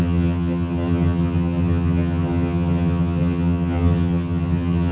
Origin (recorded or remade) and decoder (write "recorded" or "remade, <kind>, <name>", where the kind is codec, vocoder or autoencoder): remade, vocoder, HiFi-GAN